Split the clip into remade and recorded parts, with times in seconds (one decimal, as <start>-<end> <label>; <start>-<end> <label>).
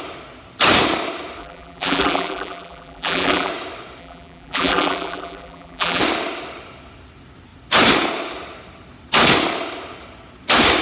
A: 0.0-1.4 recorded; 1.4-3.5 remade; 3.5-4.0 recorded; 4.0-6.0 remade; 6.0-10.8 recorded